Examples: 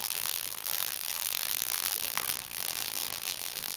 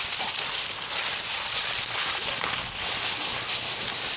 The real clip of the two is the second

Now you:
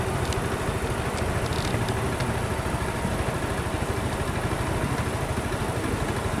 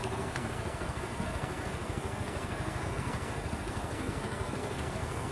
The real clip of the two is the first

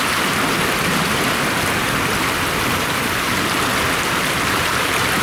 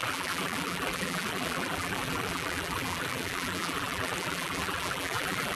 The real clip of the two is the first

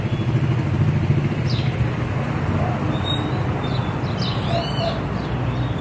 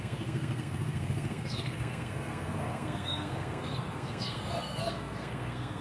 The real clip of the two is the first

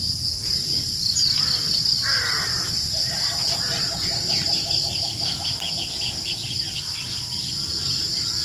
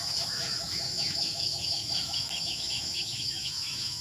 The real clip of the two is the first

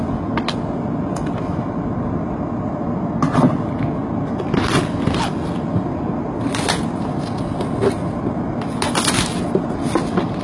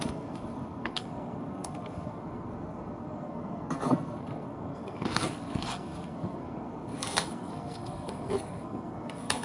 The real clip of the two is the first